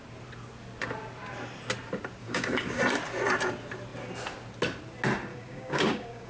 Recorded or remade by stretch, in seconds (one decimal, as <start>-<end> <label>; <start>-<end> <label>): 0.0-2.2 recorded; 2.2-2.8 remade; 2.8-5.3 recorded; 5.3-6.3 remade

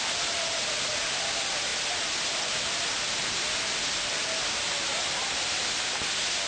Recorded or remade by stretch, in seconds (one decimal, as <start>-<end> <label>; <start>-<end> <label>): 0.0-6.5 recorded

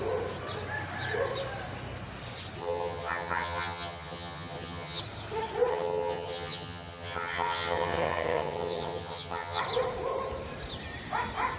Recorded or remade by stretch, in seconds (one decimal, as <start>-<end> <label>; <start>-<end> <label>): 0.0-2.6 recorded; 2.6-5.0 remade; 5.0-5.7 recorded; 5.7-9.6 remade; 9.6-11.6 recorded

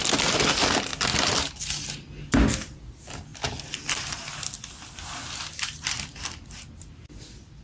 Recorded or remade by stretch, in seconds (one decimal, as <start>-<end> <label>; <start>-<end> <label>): 0.0-7.6 recorded

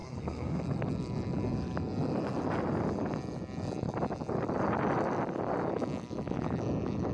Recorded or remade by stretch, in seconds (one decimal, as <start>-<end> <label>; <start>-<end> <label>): 0.0-0.6 remade; 0.6-7.1 recorded

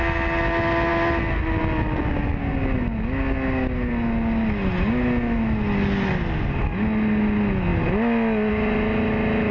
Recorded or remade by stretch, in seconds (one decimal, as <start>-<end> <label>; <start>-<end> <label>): 0.0-9.5 recorded